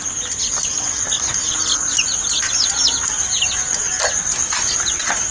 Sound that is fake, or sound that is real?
real